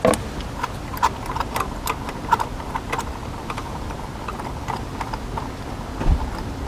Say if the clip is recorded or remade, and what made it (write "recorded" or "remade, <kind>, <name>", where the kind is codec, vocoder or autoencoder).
recorded